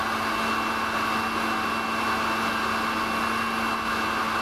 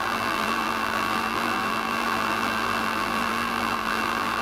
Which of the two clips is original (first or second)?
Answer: first